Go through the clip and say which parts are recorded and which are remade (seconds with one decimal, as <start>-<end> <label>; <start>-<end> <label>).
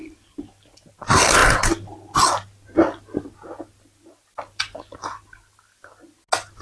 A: 0.0-6.6 recorded